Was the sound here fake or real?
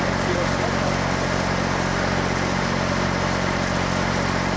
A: real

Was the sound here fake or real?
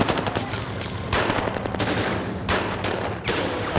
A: real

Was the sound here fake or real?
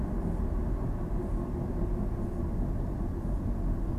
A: real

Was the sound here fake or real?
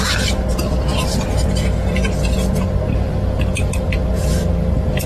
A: fake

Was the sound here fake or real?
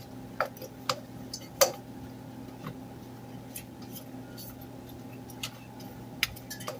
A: real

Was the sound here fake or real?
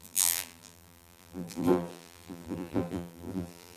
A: fake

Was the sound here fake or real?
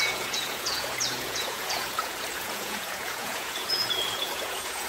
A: fake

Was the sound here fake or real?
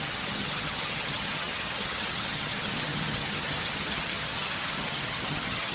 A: fake